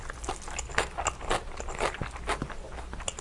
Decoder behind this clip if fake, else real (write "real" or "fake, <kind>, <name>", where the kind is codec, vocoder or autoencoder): real